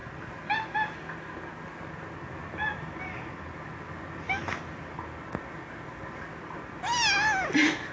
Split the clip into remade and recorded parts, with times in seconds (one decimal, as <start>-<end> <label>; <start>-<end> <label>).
0.0-7.9 recorded